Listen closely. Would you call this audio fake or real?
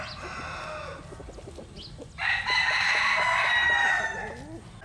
real